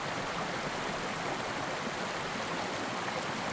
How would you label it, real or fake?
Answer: real